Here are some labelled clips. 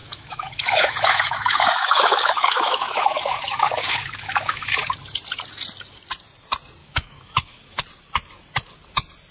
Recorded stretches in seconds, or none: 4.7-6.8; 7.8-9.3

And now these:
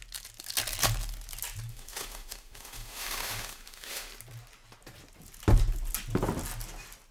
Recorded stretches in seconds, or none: 0.0-1.7; 4.1-7.1

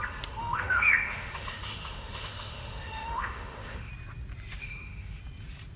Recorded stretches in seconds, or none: 0.0-0.4; 3.9-4.6; 5.2-5.8